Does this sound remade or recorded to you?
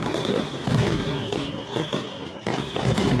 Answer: remade